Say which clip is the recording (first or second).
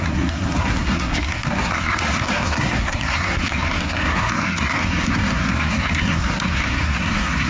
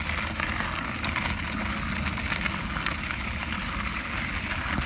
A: second